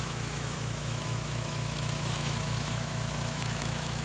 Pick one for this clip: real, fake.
fake